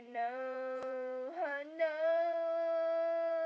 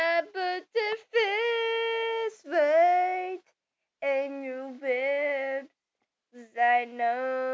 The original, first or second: second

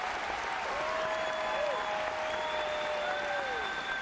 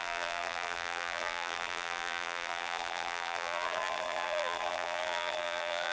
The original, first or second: first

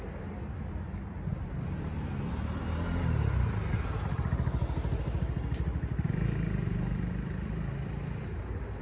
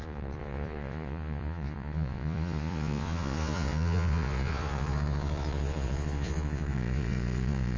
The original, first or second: first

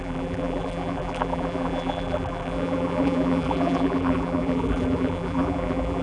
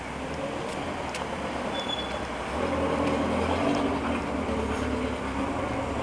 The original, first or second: second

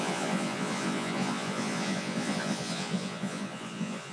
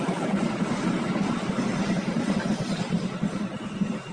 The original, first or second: second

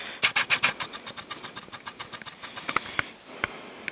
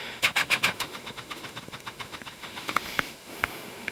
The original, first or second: first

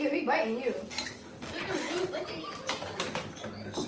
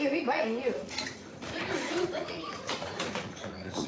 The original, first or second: first